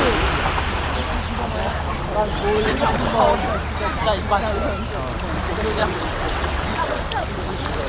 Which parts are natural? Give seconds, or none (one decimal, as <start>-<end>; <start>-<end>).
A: 0.0-5.8; 7.0-7.9